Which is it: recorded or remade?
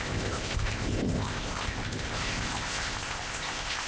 remade